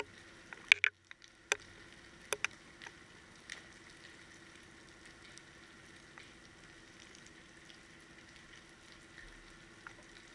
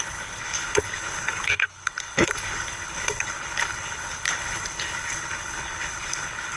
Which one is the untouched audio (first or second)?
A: first